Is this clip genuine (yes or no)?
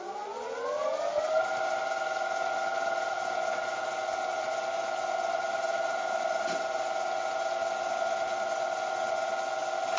yes